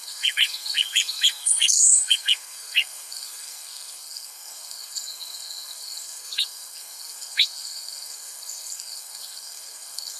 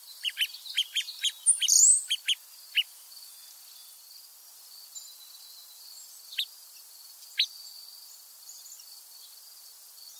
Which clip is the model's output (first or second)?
first